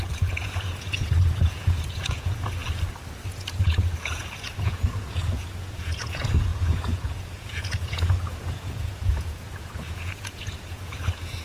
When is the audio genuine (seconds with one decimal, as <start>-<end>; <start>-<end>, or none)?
2.6-3.3